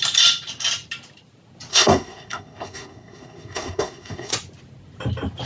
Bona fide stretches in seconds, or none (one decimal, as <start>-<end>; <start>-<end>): 0.0-1.7; 4.3-5.5